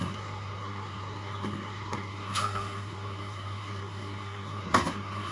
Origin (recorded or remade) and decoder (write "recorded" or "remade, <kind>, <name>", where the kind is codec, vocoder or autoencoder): remade, codec, SNAC